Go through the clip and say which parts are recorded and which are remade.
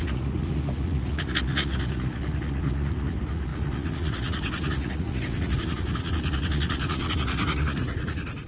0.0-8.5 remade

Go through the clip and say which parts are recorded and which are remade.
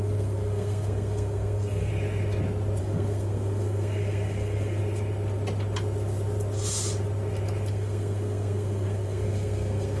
0.0-1.9 remade; 1.9-2.8 recorded; 2.8-4.8 remade; 4.8-7.7 recorded; 7.7-10.0 remade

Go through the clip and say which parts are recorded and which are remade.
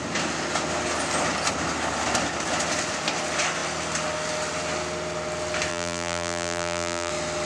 0.0-5.7 recorded; 5.7-7.1 remade; 7.1-7.5 recorded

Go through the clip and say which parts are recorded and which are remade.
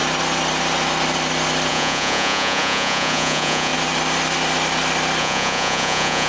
0.0-1.7 recorded; 1.7-3.7 remade; 3.7-5.2 recorded; 5.2-6.3 remade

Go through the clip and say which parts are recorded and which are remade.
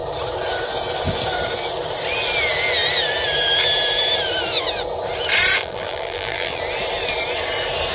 0.0-5.6 recorded; 5.6-6.6 remade; 6.6-7.9 recorded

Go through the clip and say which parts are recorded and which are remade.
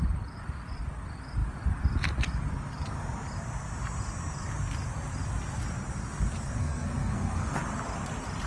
0.0-6.6 recorded; 6.6-7.6 remade; 7.6-8.5 recorded